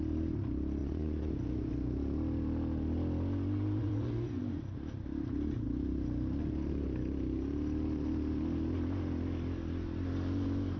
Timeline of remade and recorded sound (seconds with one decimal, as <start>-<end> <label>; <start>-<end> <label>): 0.0-0.8 recorded; 0.8-1.3 remade; 1.3-3.8 recorded; 3.8-4.4 remade; 4.4-10.8 recorded